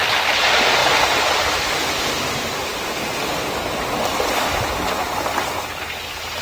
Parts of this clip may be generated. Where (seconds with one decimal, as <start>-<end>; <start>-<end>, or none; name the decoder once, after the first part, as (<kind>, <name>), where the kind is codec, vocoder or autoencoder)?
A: 0.8-1.7 (vocoder, BigVGAN v2)